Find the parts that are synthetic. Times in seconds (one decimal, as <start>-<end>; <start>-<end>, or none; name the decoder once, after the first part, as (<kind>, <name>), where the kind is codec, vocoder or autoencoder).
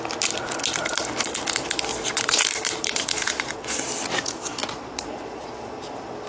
1.9-2.4 (vocoder, Vocos); 2.8-3.8; 4.6-5.5